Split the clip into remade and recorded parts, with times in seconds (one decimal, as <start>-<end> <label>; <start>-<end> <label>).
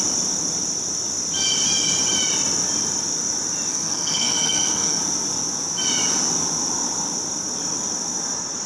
0.0-3.7 recorded; 3.7-5.0 remade; 5.0-8.7 recorded